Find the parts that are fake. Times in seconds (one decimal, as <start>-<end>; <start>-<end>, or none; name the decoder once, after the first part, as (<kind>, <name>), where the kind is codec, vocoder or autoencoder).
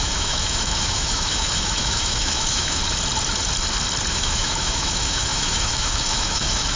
0.0-2.8 (autoencoder, DAC-VAE); 4.1-6.8